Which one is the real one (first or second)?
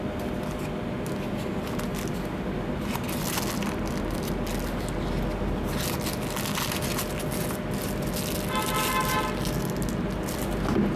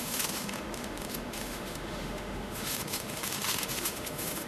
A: first